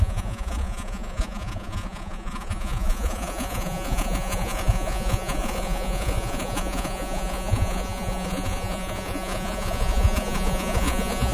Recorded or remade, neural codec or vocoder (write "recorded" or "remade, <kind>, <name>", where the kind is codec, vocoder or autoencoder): remade, vocoder, Vocos